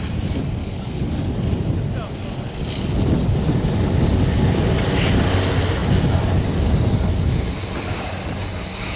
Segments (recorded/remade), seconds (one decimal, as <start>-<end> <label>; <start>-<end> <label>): 0.0-0.6 recorded; 0.6-1.2 remade; 1.2-9.0 recorded